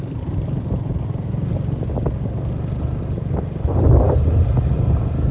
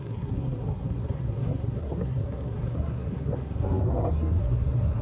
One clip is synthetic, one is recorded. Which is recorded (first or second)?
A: first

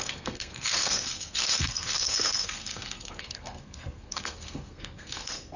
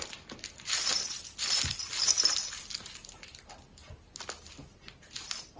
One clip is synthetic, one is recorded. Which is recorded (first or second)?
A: second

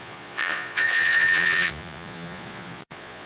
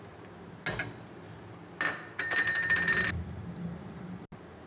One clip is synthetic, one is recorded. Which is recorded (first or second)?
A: second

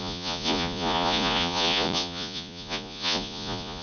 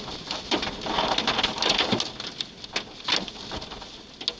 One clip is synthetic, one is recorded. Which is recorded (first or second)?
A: second